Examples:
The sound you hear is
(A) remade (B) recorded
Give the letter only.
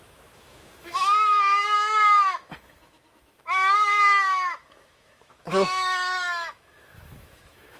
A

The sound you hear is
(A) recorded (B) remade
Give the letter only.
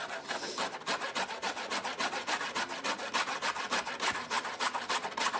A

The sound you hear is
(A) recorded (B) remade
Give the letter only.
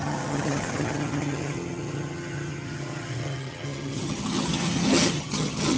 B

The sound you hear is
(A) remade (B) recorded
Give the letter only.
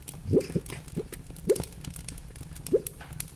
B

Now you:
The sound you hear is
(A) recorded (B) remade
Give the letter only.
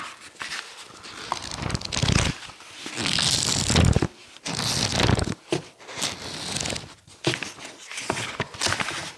A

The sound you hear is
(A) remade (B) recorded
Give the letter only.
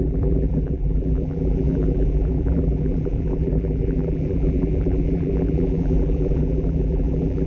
A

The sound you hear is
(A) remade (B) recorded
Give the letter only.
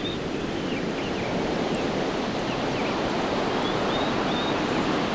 B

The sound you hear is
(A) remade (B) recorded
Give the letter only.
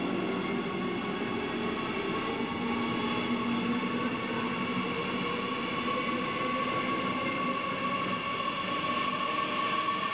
B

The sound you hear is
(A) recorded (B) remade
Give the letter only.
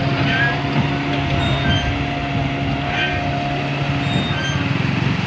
A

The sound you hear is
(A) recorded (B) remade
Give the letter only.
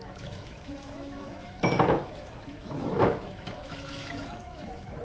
B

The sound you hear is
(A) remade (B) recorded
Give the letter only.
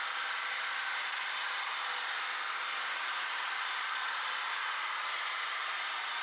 B